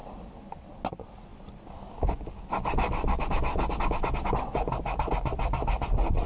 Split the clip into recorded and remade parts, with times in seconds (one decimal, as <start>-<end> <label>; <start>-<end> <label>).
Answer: 0.0-6.3 recorded